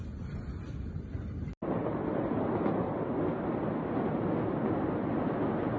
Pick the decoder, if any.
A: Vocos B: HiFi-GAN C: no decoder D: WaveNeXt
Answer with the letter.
C